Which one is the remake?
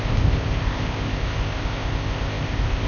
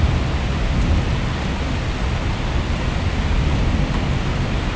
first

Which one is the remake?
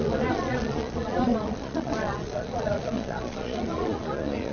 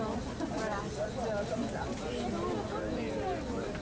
first